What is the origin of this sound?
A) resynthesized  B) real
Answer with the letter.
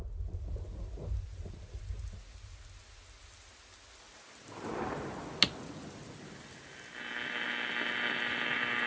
B